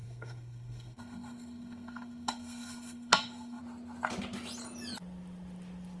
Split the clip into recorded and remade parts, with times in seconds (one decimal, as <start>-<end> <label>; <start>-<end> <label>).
0.0-3.6 remade; 3.6-6.0 recorded